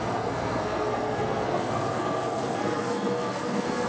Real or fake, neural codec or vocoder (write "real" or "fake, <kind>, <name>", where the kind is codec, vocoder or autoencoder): fake, codec, SNAC